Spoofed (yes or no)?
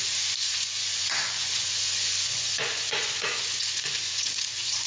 yes